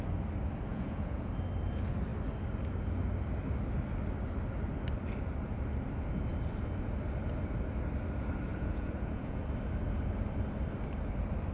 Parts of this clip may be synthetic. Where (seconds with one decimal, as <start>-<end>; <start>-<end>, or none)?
0.7-1.3; 8.5-9.4